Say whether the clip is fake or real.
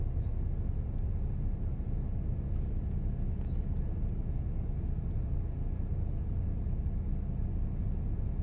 real